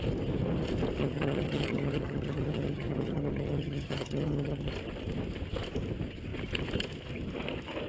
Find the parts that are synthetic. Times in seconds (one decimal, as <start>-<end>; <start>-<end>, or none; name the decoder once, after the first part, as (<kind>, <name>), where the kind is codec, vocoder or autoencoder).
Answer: 1.0-4.7 (vocoder, HiFi-GAN)